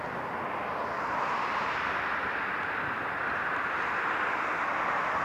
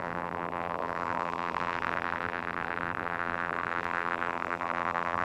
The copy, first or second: second